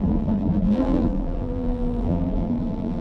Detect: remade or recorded remade